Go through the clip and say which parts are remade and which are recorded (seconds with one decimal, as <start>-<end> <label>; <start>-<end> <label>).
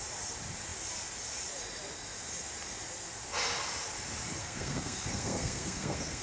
0.0-4.4 recorded; 4.4-6.2 remade